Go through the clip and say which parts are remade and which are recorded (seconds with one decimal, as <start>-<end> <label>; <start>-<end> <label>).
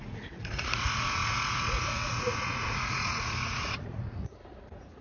0.0-5.0 remade